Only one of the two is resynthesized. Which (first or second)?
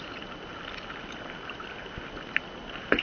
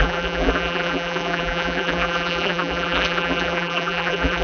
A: second